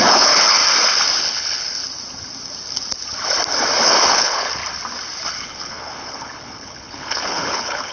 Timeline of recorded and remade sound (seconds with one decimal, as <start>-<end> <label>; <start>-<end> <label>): 0.0-0.6 remade; 0.6-1.2 recorded; 1.2-1.8 remade; 1.8-3.8 recorded; 3.8-4.6 remade; 4.6-5.3 recorded; 5.3-7.9 remade